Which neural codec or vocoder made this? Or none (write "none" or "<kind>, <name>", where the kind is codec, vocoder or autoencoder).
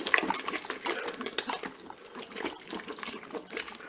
none